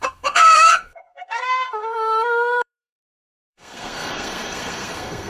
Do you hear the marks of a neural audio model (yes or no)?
yes